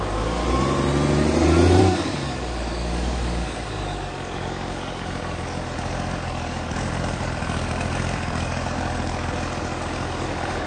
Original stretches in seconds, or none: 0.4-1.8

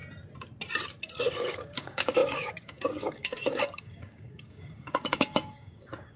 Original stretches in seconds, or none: 0.0-1.2

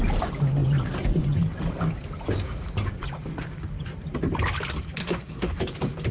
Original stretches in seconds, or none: 0.0-5.0; 5.6-6.1

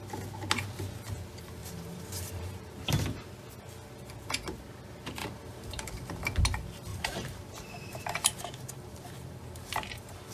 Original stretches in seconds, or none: 0.0-1.6; 2.9-5.2; 6.4-6.9

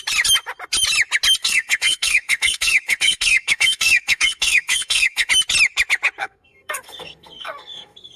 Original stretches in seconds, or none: 0.0-1.4; 5.3-6.2